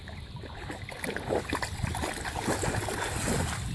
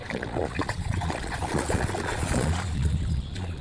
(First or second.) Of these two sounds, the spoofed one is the second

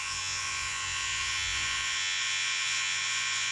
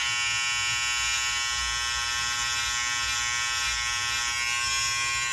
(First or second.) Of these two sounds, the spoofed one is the first